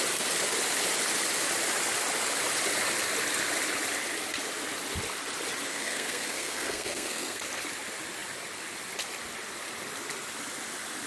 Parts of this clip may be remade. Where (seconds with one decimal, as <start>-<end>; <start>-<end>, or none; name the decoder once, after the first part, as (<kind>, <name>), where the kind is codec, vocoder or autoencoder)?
5.7-7.4 (codec, SNAC)